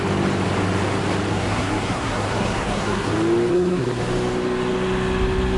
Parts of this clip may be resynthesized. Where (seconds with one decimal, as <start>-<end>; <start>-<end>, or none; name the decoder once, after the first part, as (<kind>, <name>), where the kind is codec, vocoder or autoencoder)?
1.3-3.1 (codec, SNAC); 3.5-4.0